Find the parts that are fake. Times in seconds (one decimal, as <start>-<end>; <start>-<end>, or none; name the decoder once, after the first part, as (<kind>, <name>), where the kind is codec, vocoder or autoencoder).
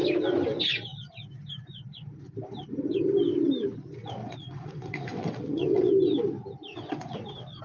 4.2-5.9 (vocoder, WaveNeXt); 6.7-7.6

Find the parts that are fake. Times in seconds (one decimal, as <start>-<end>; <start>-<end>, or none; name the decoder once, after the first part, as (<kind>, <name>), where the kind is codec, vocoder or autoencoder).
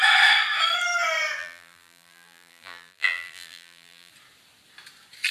1.4-4.1 (vocoder, BigVGAN v2)